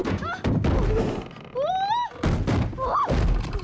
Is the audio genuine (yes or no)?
yes